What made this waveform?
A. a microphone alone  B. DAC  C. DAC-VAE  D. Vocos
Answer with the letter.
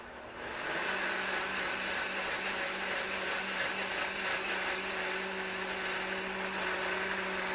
A